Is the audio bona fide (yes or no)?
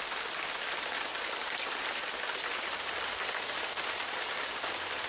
no